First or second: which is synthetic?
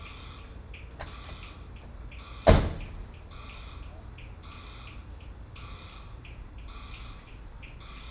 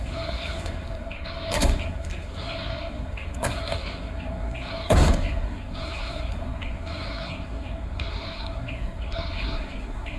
second